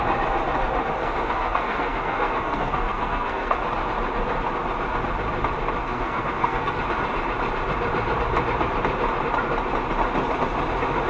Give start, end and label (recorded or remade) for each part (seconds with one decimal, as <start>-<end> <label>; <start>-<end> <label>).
0.0-1.0 recorded; 1.0-3.6 remade; 3.6-5.8 recorded; 5.8-6.8 remade; 6.8-11.1 recorded